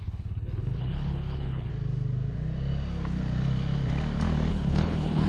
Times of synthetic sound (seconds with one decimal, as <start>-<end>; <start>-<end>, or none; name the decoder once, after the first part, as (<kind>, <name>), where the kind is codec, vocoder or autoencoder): 0.0-1.7 (codec, HILCodec); 4.5-5.3